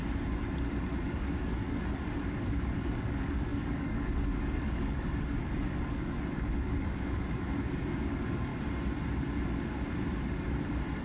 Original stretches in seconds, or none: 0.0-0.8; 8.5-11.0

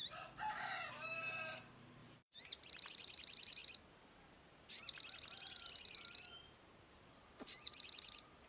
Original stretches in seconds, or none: 0.0-0.9; 3.6-6.7

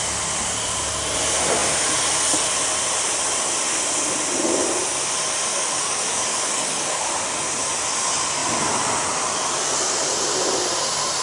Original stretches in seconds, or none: 0.0-5.5; 7.1-11.2

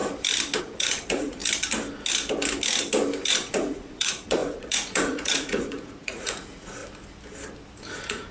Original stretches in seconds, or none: 0.0-0.6; 1.4-3.3; 6.8-7.9

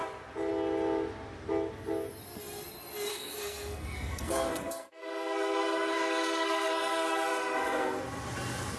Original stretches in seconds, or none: 0.0-3.1; 8.0-8.8

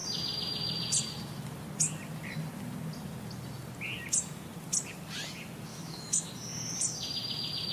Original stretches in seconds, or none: 0.0-5.7; 6.3-7.7

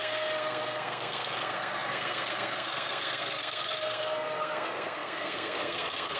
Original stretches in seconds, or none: none